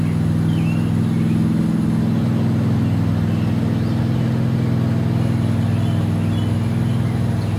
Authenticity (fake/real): real